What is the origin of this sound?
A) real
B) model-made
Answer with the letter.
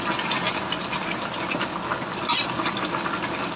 A